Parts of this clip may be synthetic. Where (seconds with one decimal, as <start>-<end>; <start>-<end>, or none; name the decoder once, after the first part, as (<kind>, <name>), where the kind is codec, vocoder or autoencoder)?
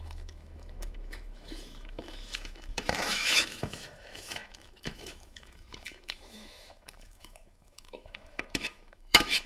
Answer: 0.0-9.5 (autoencoder, DAC-VAE)